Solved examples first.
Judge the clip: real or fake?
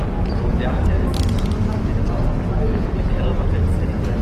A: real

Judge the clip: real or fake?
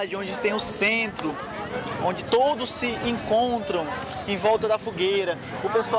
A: real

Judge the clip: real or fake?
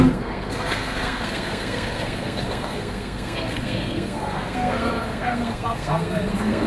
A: fake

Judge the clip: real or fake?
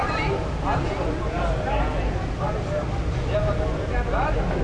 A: real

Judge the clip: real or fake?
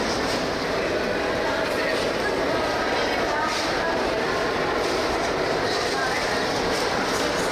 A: real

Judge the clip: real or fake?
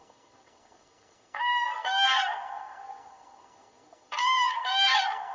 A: fake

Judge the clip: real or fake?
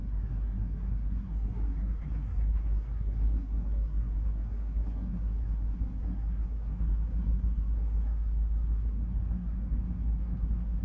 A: fake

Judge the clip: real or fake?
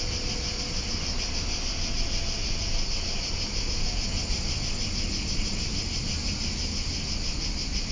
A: real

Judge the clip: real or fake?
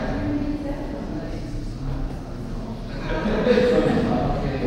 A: real